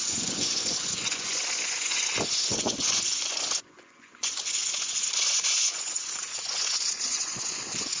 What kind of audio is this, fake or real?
fake